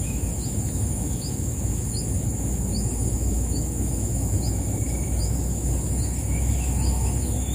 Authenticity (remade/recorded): remade